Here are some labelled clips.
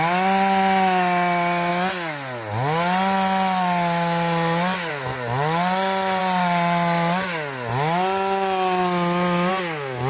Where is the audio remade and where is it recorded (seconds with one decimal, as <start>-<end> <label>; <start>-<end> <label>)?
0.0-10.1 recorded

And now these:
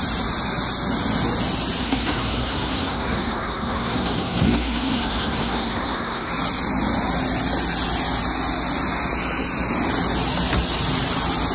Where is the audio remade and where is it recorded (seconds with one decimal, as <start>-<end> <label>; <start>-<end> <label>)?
0.0-1.8 recorded; 1.8-6.3 remade; 6.3-11.5 recorded

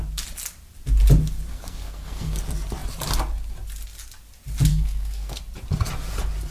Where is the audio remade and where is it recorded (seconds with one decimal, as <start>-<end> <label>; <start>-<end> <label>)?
0.0-1.5 recorded; 1.5-2.4 remade; 2.4-4.7 recorded; 4.7-5.4 remade; 5.4-6.5 recorded

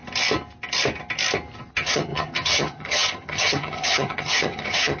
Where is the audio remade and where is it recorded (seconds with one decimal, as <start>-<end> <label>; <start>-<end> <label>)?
0.0-1.7 recorded; 1.7-5.0 remade